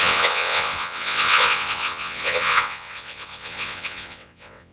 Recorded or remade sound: remade